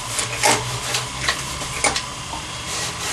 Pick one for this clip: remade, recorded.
recorded